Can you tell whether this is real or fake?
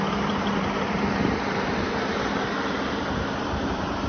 fake